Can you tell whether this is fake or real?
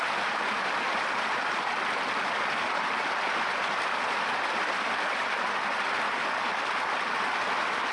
real